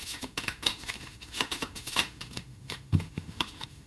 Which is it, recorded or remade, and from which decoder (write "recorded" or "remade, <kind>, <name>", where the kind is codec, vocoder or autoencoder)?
remade, autoencoder, DAC-VAE